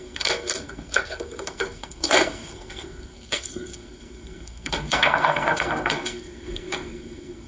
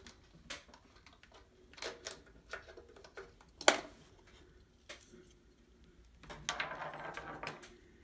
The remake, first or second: first